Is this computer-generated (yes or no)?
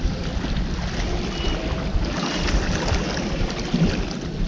no